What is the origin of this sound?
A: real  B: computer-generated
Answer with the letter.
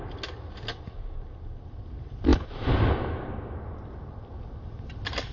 A